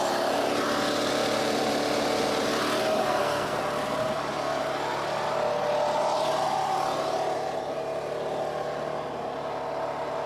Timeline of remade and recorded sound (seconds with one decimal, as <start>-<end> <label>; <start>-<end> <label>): 0.0-3.0 recorded; 3.0-3.6 remade; 3.6-10.3 recorded